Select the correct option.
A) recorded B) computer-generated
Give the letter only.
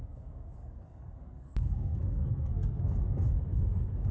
B